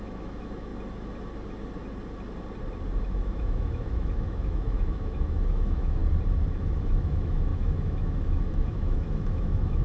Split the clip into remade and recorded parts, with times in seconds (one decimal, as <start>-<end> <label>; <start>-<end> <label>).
0.0-0.7 remade; 0.7-3.0 recorded; 3.0-6.0 remade; 6.0-6.5 recorded; 6.5-9.8 remade